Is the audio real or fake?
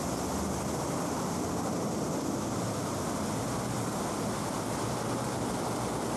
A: real